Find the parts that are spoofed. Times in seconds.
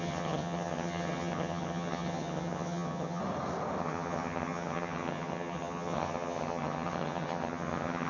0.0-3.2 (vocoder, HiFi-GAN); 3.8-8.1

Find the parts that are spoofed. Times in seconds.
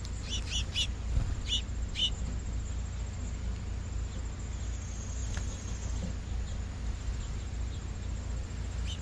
none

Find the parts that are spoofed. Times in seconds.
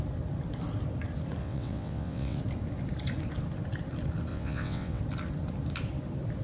1.4-2.4 (vocoder, WaveNeXt); 4.3-5.0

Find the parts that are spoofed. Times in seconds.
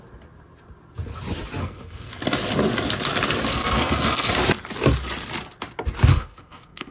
1.6-2.1 (codec, SNAC); 3.5-4.3; 6.1-6.9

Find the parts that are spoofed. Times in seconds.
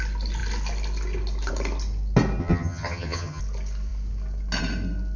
2.4-3.4 (vocoder, HiFi-GAN)